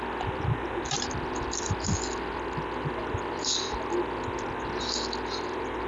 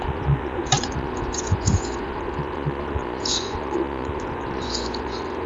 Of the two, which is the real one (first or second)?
first